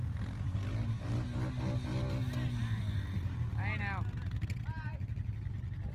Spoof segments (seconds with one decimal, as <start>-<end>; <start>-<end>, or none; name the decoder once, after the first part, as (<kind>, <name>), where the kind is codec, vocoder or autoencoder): none